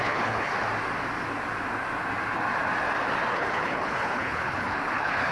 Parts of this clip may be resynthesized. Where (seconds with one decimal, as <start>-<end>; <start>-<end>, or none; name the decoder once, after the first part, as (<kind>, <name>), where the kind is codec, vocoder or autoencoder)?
0.0-0.5 (codec, HILCodec); 3.3-5.3